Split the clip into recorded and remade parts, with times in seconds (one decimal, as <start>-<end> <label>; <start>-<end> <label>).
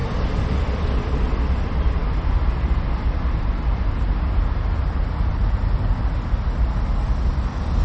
0.0-7.8 recorded